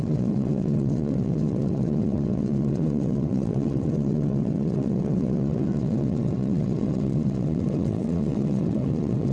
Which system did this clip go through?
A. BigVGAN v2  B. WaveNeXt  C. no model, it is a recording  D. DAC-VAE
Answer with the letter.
B